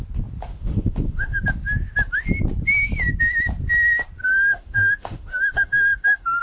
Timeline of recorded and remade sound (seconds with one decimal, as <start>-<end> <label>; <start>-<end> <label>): 0.0-0.5 recorded; 0.5-1.4 remade; 1.4-4.2 recorded; 4.2-6.4 remade